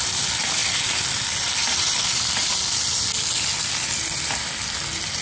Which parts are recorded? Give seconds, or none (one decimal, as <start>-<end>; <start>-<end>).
0.0-5.2